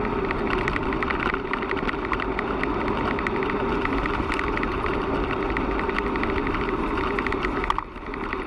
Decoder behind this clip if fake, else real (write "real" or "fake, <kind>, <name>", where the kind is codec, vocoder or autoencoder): real